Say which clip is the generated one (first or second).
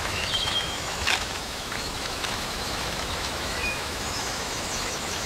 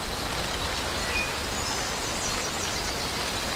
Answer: first